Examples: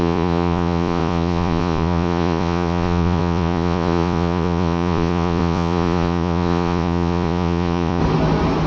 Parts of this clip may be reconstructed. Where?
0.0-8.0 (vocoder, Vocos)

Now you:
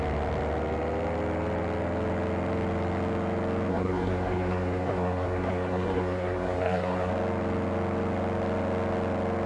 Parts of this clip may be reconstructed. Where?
3.7-7.1 (codec, SNAC)

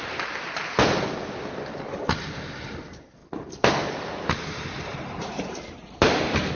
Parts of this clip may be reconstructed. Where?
3.2-6.5 (vocoder, BigVGAN v2)

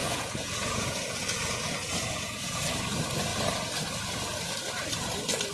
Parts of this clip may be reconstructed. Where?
0.0-2.6 (vocoder, Vocos)

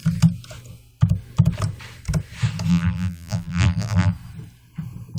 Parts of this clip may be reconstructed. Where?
2.7-4.1 (vocoder, BigVGAN v2)

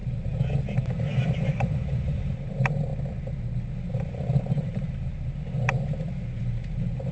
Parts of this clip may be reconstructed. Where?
1.1-2.9 (vocoder, BigVGAN v2); 3.9-5.1; 6.4-7.1